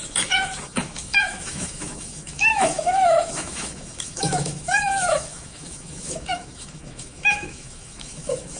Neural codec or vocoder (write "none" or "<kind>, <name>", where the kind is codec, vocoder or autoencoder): autoencoder, DAC-VAE